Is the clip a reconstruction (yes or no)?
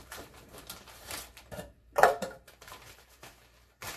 yes